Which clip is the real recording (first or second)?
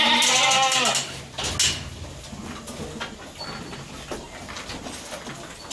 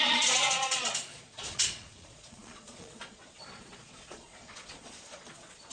first